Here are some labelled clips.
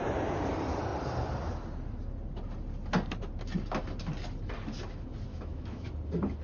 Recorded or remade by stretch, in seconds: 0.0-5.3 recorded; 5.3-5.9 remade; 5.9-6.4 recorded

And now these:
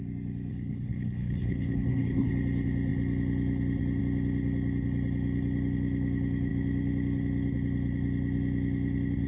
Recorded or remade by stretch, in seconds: 0.0-0.5 recorded; 0.5-2.3 remade; 2.3-9.3 recorded

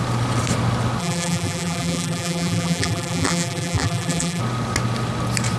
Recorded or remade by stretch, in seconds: 0.0-1.0 recorded; 1.0-4.4 remade; 4.4-5.6 recorded

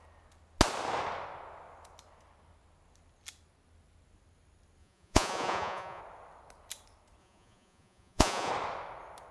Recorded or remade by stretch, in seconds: 0.0-4.8 recorded; 4.8-6.0 remade; 6.0-7.2 recorded; 7.2-8.5 remade; 8.5-9.3 recorded